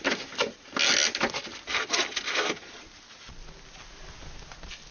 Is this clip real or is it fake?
real